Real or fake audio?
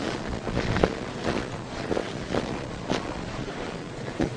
fake